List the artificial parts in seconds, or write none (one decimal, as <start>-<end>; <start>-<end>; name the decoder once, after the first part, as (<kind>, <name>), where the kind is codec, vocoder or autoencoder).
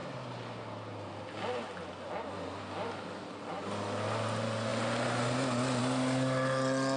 none